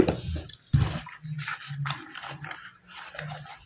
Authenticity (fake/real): real